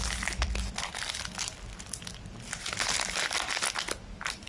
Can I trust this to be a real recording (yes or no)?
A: yes